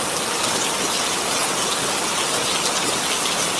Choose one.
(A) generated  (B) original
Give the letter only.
B